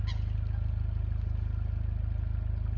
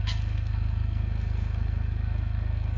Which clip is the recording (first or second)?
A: first